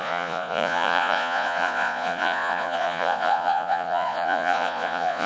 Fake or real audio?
fake